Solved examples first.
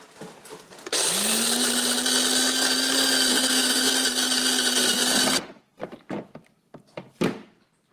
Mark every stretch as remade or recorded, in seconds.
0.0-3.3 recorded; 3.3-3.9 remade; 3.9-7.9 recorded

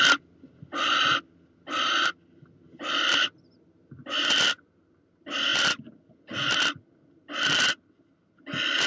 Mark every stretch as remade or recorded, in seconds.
0.0-8.9 recorded

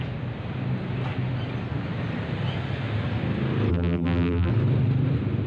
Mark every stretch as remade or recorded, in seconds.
0.0-3.7 recorded; 3.7-4.5 remade; 4.5-5.5 recorded

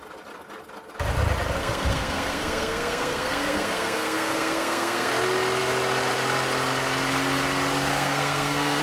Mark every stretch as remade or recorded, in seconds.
0.0-1.6 recorded; 1.6-5.1 remade; 5.1-7.9 recorded; 7.9-8.8 remade

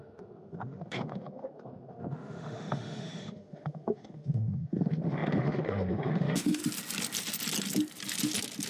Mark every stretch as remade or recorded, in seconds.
0.0-6.6 remade; 6.6-8.7 recorded